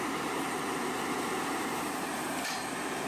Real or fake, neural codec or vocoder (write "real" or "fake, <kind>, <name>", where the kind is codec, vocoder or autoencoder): fake, vocoder, BigVGAN v2